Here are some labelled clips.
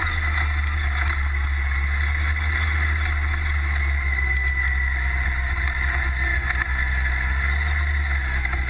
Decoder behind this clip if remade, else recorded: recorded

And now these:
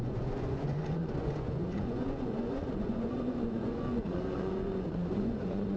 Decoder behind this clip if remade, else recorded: remade, vocoder, Vocos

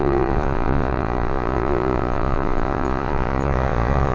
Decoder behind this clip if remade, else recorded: remade, vocoder, Vocos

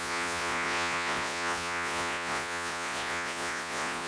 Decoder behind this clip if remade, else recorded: remade, vocoder, Vocos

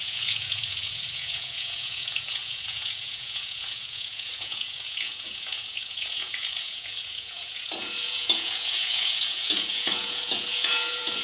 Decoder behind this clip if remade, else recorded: remade, vocoder, Vocos